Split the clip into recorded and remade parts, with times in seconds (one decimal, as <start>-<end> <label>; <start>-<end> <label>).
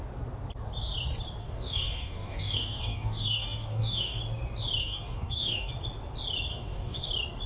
0.0-1.4 recorded; 1.4-4.2 remade; 4.2-4.8 recorded; 4.8-5.7 remade; 5.7-6.5 recorded; 6.5-7.1 remade; 7.1-7.5 recorded